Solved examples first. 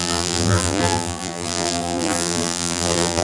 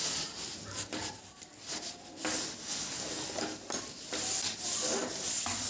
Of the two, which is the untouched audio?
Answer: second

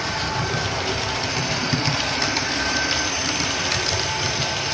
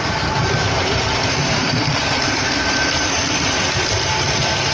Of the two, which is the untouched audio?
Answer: first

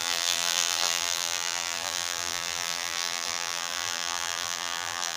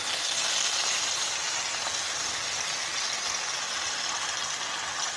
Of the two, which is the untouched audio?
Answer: second